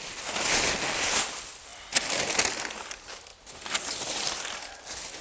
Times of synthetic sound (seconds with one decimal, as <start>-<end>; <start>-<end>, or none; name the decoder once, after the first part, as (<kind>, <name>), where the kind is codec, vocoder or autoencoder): none